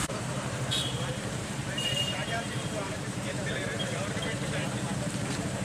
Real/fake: fake